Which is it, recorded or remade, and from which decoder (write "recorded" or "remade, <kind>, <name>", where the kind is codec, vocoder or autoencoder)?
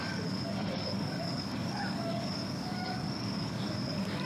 remade, codec, DAC